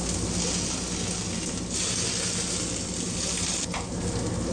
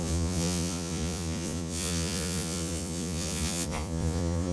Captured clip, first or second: first